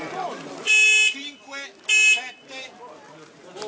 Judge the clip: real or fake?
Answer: real